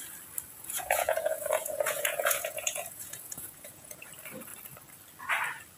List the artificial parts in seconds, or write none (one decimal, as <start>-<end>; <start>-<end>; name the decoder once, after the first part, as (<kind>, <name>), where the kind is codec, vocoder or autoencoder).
0.6-4.1 (vocoder, Vocos)